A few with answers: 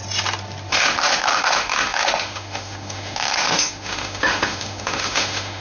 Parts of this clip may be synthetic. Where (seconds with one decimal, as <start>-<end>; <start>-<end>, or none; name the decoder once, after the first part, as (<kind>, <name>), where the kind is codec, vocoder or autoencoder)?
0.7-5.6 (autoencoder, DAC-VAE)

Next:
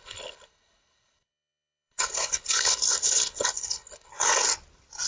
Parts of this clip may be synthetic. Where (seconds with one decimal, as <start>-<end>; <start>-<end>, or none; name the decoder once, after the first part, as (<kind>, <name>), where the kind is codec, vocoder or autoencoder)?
0.0-4.1 (codec, HILCodec)

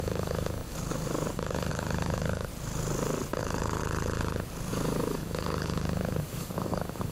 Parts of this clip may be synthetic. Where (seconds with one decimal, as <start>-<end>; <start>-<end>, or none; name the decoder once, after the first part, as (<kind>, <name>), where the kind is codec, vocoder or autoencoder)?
0.0-2.5 (codec, DAC); 3.4-3.8; 4.7-7.1

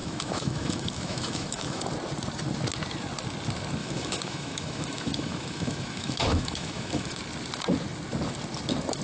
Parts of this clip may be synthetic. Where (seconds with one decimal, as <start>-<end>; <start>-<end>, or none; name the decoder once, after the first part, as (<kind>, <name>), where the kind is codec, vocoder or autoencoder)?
0.0-1.8 (autoencoder, DAC-VAE); 3.8-7.2

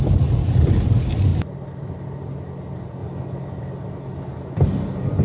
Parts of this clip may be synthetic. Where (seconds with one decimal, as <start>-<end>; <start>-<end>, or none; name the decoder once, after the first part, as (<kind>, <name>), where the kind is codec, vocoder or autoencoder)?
none